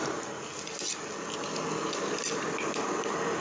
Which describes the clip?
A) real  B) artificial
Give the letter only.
A